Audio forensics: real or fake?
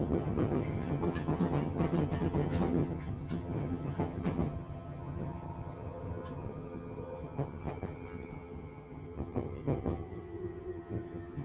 fake